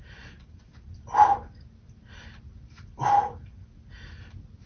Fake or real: real